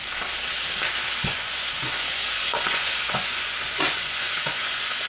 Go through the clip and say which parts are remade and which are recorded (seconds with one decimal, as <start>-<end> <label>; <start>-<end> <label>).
0.0-1.2 recorded; 1.2-5.1 remade